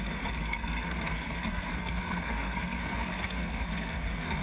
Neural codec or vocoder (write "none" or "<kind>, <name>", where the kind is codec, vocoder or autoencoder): codec, SNAC